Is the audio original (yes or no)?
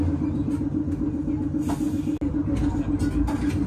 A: yes